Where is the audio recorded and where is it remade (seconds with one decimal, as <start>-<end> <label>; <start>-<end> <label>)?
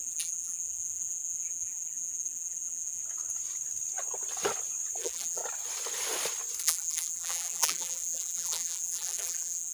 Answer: 0.0-3.0 remade; 3.0-5.0 recorded; 5.0-5.4 remade; 5.4-6.6 recorded; 6.6-9.7 remade